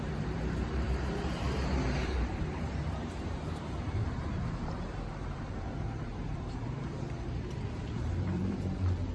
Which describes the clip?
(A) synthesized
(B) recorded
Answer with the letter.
A